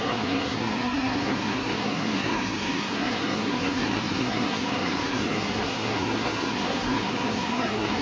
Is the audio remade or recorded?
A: remade